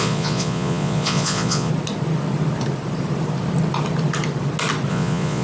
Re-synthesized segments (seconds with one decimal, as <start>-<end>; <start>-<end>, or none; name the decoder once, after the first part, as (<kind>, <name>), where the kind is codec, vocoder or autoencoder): 0.0-1.7 (vocoder, Vocos); 4.9-5.4